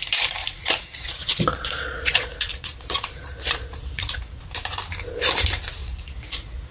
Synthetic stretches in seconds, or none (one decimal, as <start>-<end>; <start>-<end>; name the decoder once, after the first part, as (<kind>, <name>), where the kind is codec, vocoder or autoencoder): 0.4-4.4 (vocoder, Vocos); 5.8-6.7